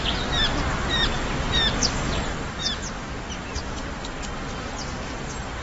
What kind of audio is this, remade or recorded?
recorded